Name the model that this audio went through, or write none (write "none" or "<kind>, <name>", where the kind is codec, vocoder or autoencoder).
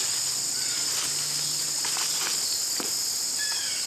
none